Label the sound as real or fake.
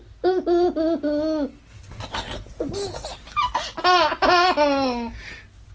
real